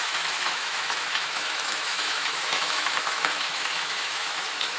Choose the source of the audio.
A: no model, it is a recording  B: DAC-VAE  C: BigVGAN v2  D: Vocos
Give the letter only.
B